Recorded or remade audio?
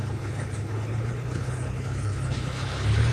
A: remade